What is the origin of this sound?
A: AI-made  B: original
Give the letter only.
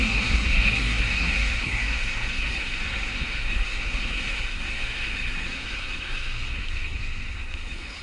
A